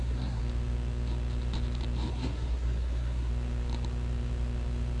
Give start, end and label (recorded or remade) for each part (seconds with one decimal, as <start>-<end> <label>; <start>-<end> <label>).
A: 0.0-0.4 remade; 0.4-2.1 recorded; 2.1-3.3 remade; 3.3-5.0 recorded